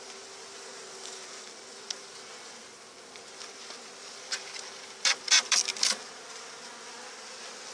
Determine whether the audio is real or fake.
real